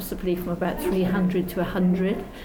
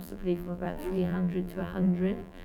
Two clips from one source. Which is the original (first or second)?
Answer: first